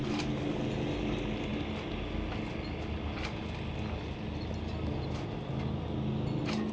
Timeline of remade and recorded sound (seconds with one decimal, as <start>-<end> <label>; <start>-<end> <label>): 0.0-6.7 recorded